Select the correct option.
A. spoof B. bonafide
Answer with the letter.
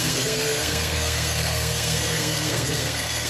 A